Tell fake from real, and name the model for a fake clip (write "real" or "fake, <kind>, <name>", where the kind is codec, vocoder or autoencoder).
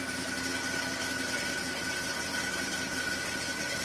real